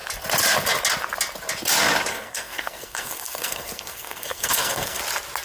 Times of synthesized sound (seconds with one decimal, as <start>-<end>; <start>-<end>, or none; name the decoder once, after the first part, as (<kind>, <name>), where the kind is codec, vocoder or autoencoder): 2.1-5.0 (codec, SNAC)